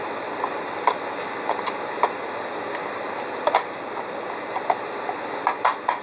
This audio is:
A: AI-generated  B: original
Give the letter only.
B